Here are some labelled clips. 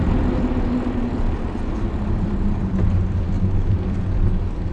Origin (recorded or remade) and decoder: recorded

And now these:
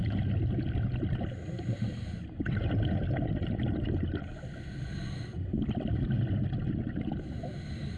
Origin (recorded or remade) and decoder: recorded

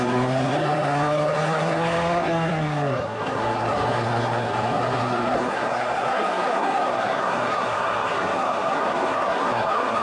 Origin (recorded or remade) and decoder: remade, codec, SNAC